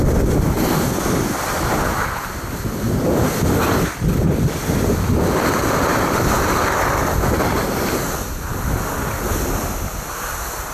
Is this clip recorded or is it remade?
recorded